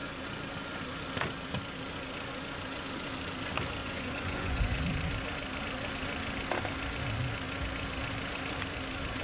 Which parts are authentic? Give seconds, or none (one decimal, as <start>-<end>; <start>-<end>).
0.0-3.8; 4.8-9.2